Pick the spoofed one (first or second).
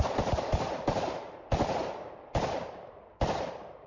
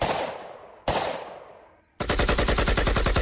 first